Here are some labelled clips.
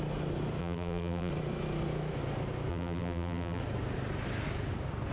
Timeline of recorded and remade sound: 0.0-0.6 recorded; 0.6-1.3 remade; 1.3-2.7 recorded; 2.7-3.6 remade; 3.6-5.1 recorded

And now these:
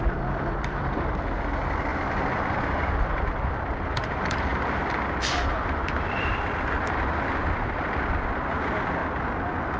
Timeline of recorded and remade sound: 0.0-4.5 remade; 4.5-5.3 recorded; 5.3-9.0 remade; 9.0-9.8 recorded

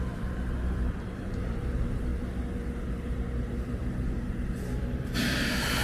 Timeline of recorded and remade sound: 0.0-2.1 remade; 2.1-2.9 recorded; 2.9-5.8 remade

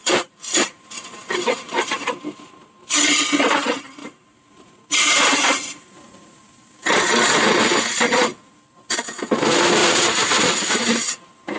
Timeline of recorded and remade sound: 0.0-3.2 remade; 3.2-4.0 recorded; 4.0-7.1 remade; 7.1-9.8 recorded; 9.8-10.8 remade; 10.8-11.6 recorded